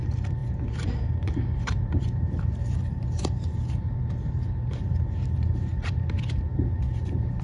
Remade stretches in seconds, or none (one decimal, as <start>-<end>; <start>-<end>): 0.0-7.4